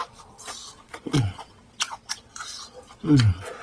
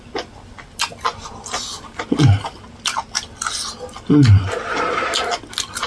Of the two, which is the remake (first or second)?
first